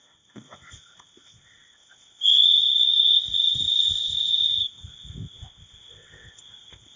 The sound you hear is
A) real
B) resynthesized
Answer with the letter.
B